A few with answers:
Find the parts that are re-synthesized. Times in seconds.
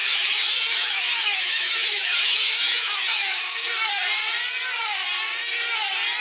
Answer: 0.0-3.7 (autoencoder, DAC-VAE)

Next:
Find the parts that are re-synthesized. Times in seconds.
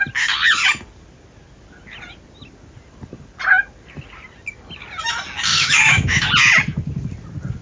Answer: 5.5-6.3 (autoencoder, DAC-VAE)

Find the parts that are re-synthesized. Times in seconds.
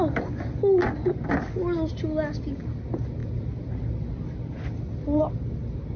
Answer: none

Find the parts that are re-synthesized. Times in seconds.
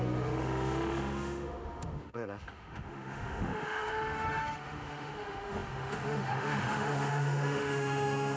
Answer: 0.0-8.4 (autoencoder, DAC-VAE)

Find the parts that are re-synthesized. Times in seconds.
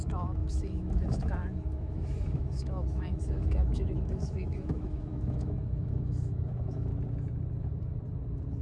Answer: 0.0-6.9 (autoencoder, DAC-VAE)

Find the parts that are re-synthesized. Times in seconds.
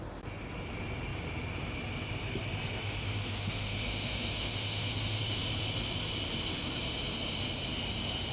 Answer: 2.8-5.4 (autoencoder, DAC-VAE)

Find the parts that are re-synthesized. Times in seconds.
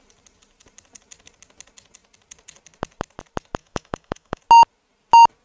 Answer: 3.6-4.4 (autoencoder, DAC-VAE)